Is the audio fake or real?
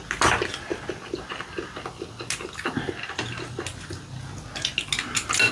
real